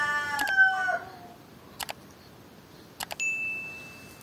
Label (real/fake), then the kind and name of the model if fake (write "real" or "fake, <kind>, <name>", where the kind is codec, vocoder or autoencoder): real